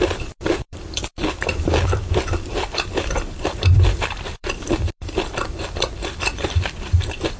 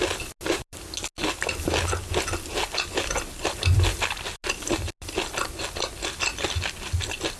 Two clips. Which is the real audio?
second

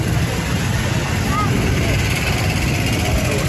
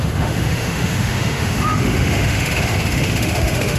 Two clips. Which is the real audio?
first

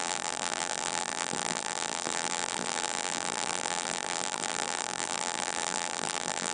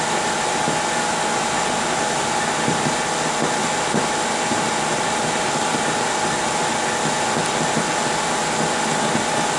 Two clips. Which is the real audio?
second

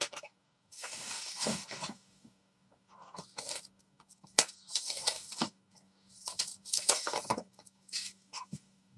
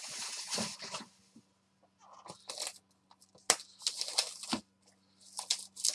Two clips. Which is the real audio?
second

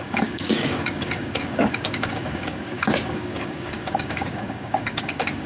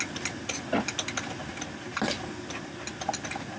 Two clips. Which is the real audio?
second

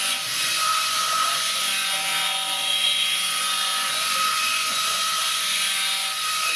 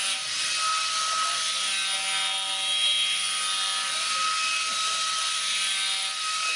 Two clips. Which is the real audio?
second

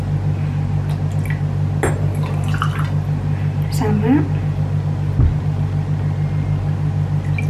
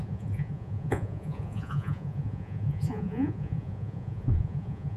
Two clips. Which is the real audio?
first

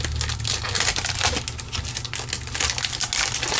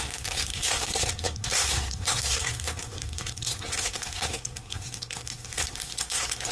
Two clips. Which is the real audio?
first